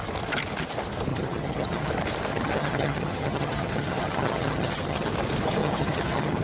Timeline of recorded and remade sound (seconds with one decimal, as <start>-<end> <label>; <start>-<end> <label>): 0.0-1.1 recorded; 1.1-1.9 remade; 1.9-2.3 recorded; 2.3-5.1 remade; 5.1-5.6 recorded; 5.6-6.4 remade